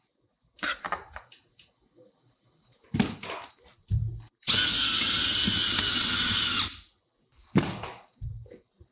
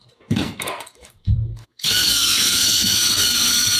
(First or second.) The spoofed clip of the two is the second